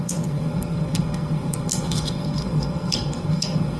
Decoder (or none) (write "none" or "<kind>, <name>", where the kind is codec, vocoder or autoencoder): codec, SNAC